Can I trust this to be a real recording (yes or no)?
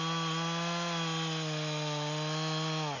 yes